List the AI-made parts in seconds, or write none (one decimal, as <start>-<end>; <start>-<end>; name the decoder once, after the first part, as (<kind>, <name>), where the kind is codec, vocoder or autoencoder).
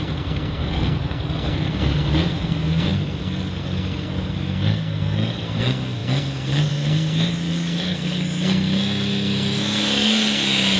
0.0-10.8 (codec, SNAC)